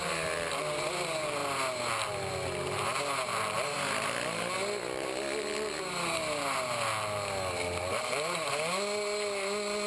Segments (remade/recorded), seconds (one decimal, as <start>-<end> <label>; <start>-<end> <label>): 0.0-9.9 recorded